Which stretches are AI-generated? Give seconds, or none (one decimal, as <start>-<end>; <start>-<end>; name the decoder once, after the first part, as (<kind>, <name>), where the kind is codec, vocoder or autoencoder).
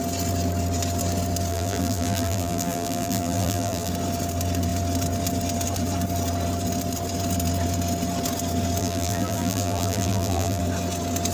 1.5-3.9 (vocoder, BigVGAN v2); 8.8-10.6